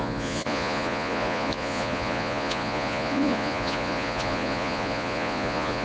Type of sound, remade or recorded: remade